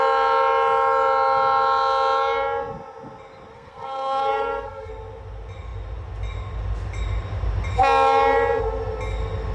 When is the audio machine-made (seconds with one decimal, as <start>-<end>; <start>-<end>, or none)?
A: 3.5-4.9